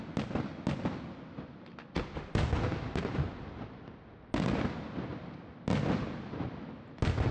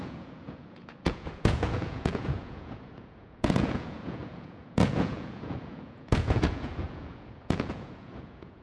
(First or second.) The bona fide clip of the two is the first